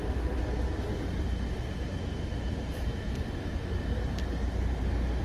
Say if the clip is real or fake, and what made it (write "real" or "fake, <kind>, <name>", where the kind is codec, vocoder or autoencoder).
real